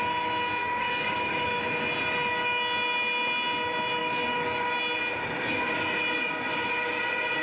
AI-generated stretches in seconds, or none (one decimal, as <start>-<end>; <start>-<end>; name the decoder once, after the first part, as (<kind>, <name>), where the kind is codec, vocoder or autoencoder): 0.6-1.6 (codec, DAC)